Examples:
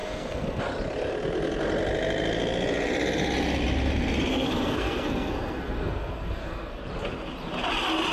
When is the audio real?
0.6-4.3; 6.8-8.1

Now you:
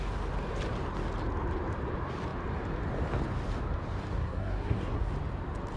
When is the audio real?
0.0-4.2; 5.1-5.8